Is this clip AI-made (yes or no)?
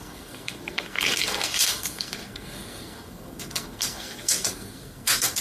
yes